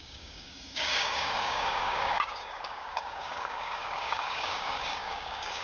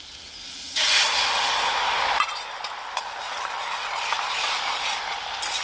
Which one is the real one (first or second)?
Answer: second